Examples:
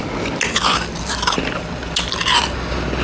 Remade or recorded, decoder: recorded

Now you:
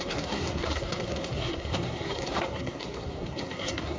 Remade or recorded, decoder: remade, codec, SNAC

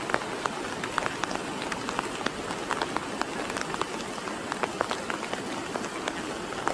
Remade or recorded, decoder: recorded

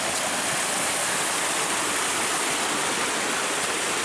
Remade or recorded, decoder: recorded